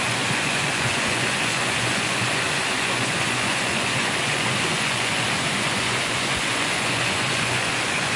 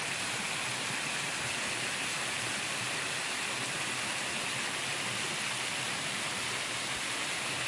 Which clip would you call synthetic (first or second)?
first